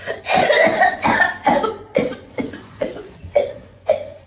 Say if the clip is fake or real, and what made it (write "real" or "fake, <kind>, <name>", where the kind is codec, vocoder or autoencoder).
fake, vocoder, Vocos